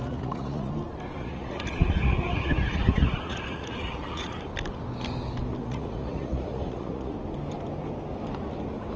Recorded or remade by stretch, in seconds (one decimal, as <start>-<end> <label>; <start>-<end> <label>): 0.0-0.7 remade; 0.7-1.2 recorded; 1.2-4.4 remade; 4.4-5.6 recorded; 5.6-7.1 remade; 7.1-9.0 recorded